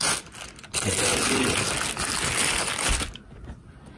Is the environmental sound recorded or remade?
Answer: recorded